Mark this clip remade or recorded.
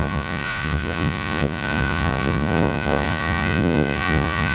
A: remade